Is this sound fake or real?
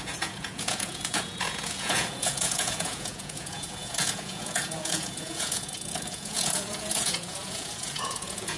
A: fake